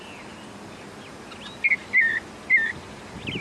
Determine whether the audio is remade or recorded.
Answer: recorded